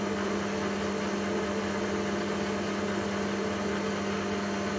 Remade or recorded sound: recorded